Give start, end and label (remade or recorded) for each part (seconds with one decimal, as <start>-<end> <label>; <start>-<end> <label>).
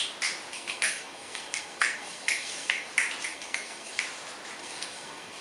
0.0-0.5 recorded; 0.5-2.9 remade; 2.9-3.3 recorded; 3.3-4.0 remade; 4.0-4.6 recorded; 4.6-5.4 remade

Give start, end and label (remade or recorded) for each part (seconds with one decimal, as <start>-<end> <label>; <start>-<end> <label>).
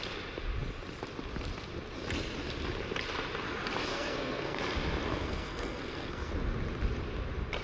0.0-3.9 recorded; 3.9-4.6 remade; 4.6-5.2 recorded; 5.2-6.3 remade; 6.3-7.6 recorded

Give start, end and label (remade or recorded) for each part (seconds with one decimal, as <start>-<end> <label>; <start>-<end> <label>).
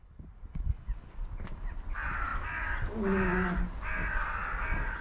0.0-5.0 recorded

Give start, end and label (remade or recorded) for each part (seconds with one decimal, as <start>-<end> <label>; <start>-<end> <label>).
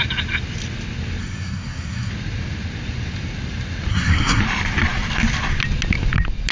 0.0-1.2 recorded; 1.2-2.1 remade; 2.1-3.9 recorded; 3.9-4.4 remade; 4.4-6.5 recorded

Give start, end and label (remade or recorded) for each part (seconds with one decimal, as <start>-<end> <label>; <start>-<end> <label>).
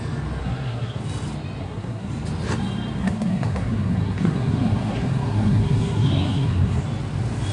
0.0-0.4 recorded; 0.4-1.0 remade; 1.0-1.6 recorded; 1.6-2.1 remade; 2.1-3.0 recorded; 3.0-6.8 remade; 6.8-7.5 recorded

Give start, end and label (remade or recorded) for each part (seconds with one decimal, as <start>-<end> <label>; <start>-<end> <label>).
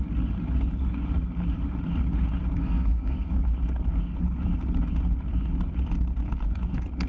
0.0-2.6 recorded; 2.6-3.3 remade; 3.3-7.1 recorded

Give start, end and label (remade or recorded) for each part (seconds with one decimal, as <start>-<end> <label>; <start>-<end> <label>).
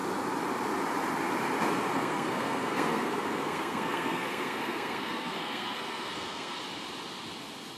0.0-1.9 recorded; 1.9-6.6 remade; 6.6-7.8 recorded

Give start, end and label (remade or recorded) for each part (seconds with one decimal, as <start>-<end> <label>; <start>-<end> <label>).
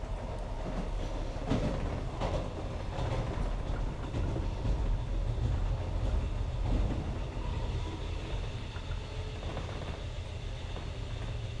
0.0-11.6 recorded